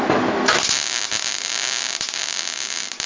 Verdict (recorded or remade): recorded